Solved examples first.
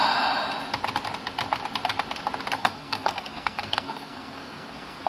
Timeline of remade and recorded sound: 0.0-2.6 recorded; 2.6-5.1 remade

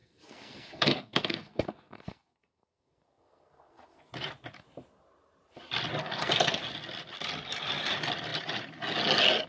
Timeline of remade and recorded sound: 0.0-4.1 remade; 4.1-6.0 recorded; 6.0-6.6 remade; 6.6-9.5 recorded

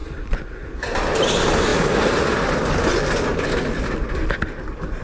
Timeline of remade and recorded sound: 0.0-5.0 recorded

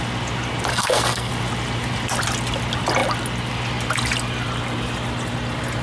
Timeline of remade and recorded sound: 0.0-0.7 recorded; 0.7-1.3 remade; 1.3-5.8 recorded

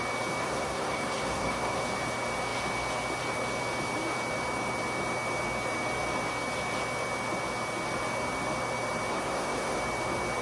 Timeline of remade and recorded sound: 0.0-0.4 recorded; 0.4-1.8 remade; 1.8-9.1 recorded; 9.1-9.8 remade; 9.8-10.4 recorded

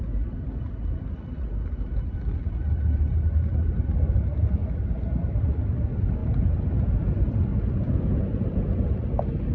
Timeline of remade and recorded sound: 0.0-9.5 recorded

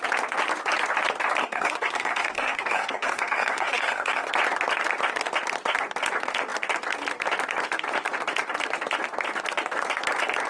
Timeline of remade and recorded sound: 0.0-1.4 recorded; 1.4-4.3 remade; 4.3-10.5 recorded